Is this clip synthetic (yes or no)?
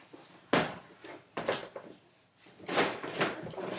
no